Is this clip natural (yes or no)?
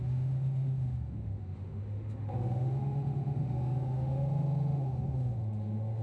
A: no